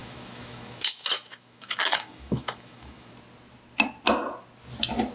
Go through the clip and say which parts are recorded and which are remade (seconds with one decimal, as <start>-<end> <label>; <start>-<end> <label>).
0.0-3.1 remade; 3.1-5.1 recorded